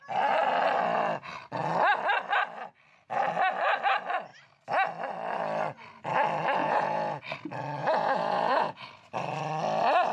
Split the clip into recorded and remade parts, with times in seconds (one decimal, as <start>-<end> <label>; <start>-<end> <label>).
0.0-6.6 recorded; 6.6-7.2 remade; 7.2-7.8 recorded; 7.8-8.9 remade; 8.9-10.1 recorded